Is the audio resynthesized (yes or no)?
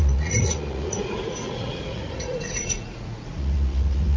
yes